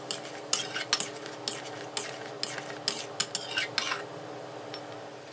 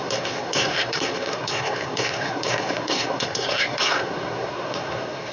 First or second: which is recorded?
first